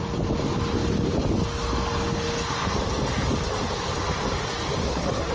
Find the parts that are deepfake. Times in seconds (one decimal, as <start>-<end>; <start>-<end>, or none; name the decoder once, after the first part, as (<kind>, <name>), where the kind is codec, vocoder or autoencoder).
4.8-5.3 (codec, SNAC)